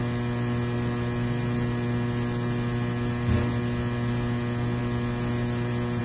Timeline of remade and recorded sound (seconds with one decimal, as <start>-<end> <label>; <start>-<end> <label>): 0.0-6.0 recorded